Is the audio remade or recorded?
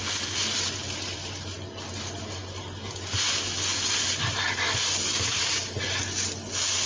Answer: recorded